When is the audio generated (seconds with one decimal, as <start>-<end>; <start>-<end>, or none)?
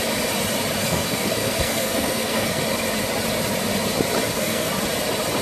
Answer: 0.8-2.6; 4.2-4.7